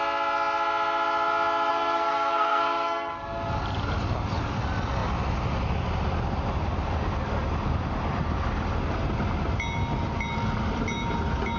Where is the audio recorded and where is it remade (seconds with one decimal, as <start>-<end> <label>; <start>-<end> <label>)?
0.0-1.7 recorded; 1.7-3.2 remade; 3.2-11.6 recorded